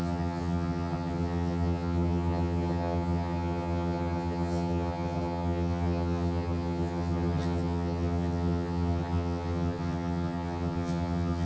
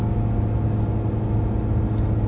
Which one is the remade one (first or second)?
first